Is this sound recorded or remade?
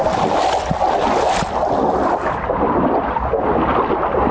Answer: recorded